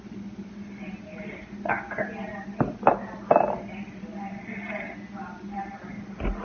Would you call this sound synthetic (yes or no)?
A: no